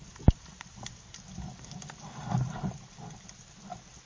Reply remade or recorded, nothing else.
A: recorded